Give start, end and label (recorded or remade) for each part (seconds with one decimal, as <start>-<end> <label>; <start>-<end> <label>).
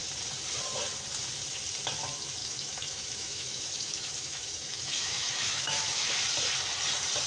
0.0-2.4 recorded; 2.4-6.1 remade; 6.1-7.3 recorded